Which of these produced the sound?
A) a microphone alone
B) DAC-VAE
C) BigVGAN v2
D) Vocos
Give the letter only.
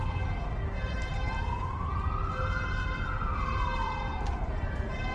A